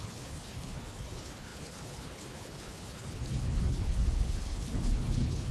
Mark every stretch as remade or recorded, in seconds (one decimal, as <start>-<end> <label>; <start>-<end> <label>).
0.0-5.5 remade

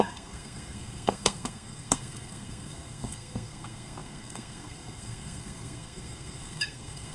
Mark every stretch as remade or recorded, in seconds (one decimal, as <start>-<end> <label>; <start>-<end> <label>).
0.0-7.1 remade